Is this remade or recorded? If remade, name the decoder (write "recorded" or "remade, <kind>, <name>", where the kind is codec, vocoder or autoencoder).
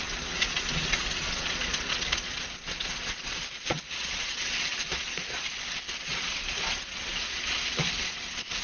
remade, vocoder, Vocos